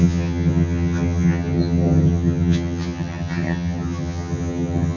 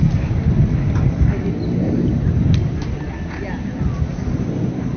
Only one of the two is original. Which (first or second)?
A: second